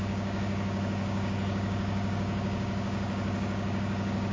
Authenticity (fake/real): fake